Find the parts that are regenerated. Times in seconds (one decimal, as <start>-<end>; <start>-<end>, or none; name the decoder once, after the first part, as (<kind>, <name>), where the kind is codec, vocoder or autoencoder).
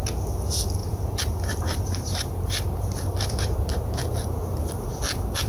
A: 0.8-4.1 (vocoder, BigVGAN v2); 4.5-5.0